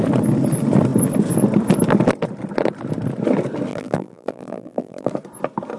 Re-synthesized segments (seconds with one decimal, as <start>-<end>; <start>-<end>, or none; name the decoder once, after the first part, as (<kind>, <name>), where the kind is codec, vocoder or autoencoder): 3.7-5.1 (vocoder, BigVGAN v2)